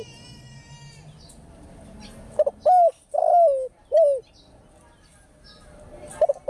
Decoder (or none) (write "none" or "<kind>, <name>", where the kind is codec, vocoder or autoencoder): none